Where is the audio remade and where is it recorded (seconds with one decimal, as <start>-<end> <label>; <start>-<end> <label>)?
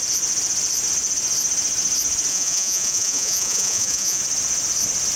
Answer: 0.0-2.3 recorded; 2.3-4.2 remade; 4.2-5.2 recorded